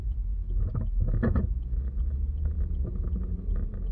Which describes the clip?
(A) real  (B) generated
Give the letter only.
A